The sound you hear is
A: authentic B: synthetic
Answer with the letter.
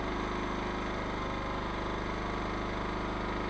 A